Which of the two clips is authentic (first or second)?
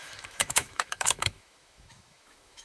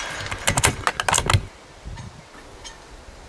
second